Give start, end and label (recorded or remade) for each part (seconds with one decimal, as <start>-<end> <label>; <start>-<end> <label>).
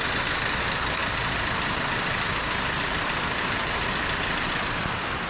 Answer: 0.0-5.3 recorded